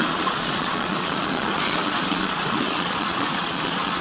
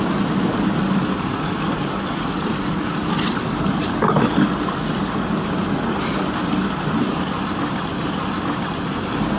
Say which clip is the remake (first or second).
first